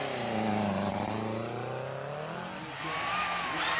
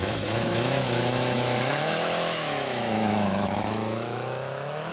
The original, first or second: first